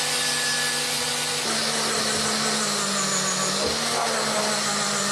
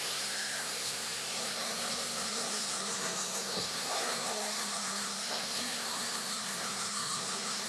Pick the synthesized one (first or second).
second